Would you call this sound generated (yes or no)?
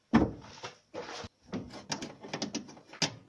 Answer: no